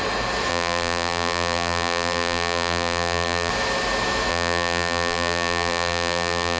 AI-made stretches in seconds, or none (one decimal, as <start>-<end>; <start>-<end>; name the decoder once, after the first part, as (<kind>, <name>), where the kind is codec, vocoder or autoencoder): 0.5-3.5 (vocoder, BigVGAN v2); 4.3-6.6